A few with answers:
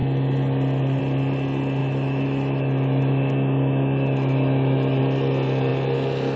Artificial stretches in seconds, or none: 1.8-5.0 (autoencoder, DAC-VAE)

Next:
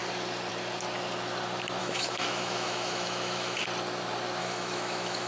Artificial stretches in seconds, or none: 1.8-3.6 (autoencoder, DAC-VAE); 4.4-5.3

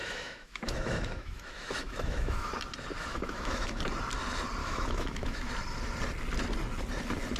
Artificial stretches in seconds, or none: 0.0-2.5 (autoencoder, DAC-VAE); 3.0-3.8; 4.6-5.5

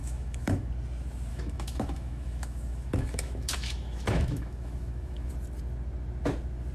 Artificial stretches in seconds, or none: 0.0-0.7 (autoencoder, DAC-VAE); 1.3-5.3

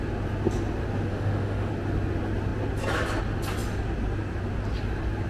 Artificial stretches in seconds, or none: 1.1-1.7 (autoencoder, DAC-VAE)